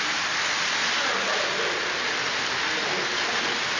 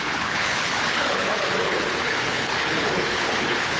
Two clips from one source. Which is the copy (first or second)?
second